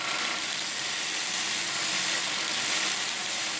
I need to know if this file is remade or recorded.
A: recorded